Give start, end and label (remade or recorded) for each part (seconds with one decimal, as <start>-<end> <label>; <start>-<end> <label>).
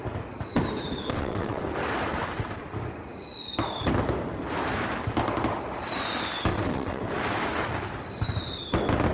0.0-1.1 recorded; 1.1-1.6 remade; 1.6-6.5 recorded; 6.5-7.0 remade; 7.0-9.1 recorded